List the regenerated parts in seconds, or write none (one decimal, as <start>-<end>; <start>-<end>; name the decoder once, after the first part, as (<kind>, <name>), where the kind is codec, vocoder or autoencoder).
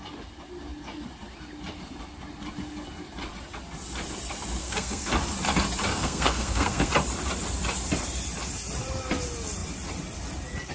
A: 4.6-5.1 (codec, SNAC); 5.9-6.9